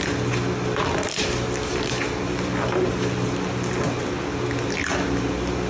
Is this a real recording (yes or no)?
yes